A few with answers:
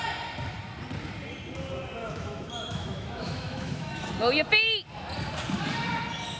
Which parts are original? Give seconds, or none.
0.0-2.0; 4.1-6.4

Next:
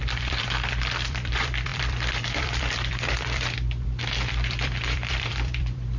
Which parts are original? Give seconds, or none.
none

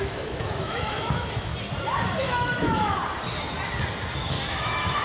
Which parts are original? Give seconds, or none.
1.5-2.2; 3.0-4.5